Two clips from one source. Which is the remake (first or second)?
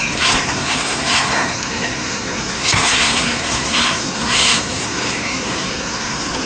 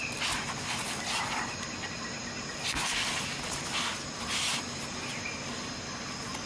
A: first